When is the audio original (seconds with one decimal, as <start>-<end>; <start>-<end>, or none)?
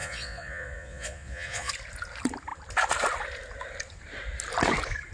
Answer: 1.7-5.1